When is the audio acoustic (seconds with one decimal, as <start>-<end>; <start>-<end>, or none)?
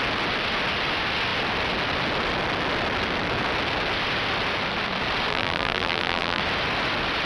0.0-5.3; 6.4-7.3